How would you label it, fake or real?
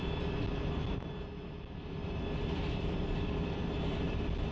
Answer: real